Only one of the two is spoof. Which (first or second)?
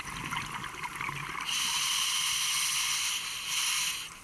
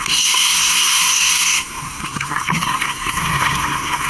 second